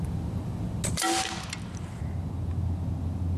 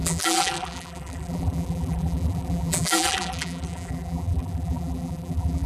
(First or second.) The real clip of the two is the first